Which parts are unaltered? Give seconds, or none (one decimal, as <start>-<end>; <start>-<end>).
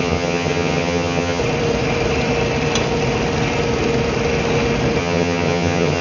1.4-5.0